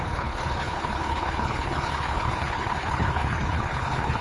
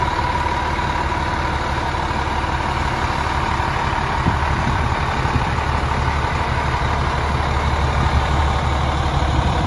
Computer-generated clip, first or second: first